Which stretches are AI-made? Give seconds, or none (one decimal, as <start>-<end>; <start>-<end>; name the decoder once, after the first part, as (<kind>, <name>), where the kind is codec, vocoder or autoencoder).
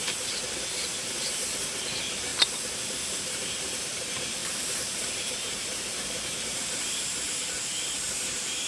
0.0-2.3 (vocoder, BigVGAN v2); 3.1-8.7